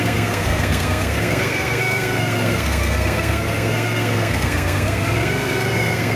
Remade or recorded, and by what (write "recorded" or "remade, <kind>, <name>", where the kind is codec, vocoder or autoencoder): remade, codec, SNAC